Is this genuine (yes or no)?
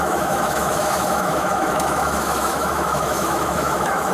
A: no